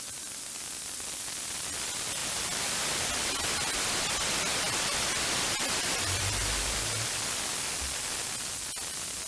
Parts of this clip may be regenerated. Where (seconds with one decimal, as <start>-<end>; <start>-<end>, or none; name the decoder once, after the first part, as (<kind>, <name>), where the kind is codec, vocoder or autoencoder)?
4.5-6.4 (vocoder, BigVGAN v2)